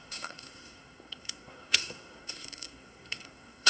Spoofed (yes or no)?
yes